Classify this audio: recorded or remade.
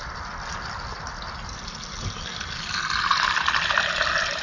recorded